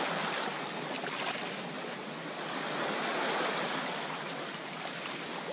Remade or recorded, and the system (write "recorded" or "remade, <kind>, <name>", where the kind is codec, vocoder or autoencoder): recorded